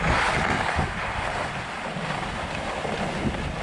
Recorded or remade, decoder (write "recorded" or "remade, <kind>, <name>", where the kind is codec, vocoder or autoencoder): recorded